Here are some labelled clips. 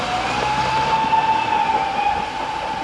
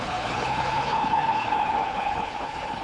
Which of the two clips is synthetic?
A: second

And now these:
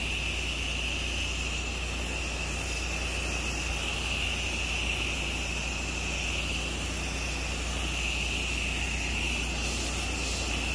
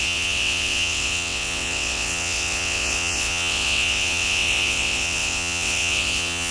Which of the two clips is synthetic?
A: second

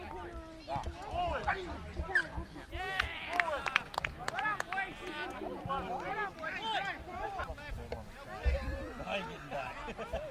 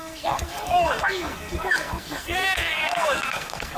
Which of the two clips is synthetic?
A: second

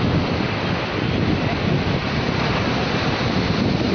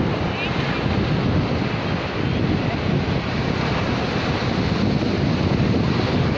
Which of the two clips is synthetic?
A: first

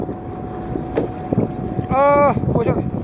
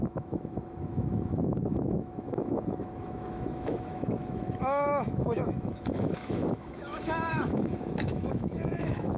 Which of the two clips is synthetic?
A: second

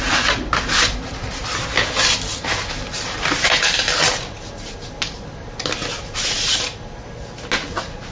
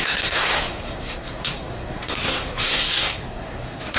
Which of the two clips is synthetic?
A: second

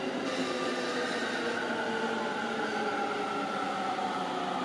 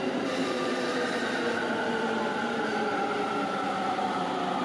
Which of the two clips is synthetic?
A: second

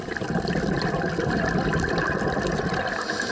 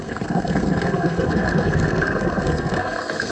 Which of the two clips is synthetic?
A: second